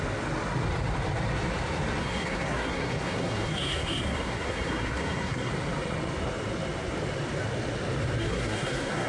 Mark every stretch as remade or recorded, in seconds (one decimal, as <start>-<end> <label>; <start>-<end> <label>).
0.0-2.0 recorded; 2.0-5.5 remade; 5.5-8.2 recorded; 8.2-9.1 remade